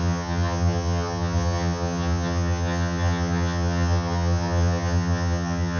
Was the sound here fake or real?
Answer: fake